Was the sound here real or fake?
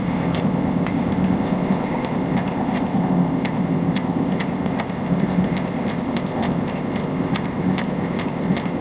fake